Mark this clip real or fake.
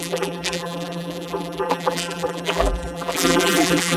fake